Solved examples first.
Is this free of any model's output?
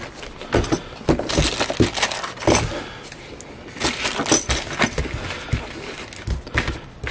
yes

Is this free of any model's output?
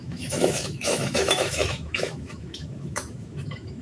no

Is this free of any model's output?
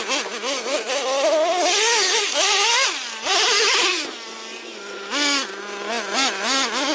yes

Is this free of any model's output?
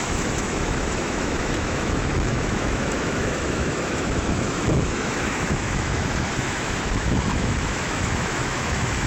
no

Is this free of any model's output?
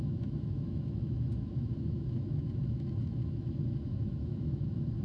no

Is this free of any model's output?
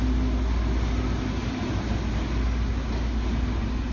yes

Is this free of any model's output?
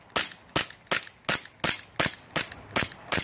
yes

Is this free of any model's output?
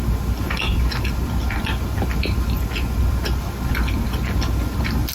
yes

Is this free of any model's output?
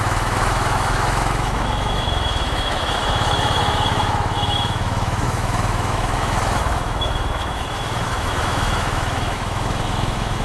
no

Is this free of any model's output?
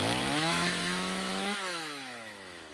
no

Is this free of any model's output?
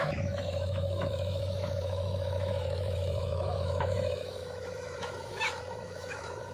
no